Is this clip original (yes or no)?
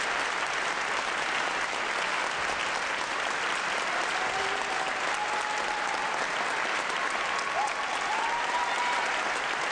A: yes